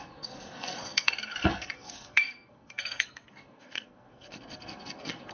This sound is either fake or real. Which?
fake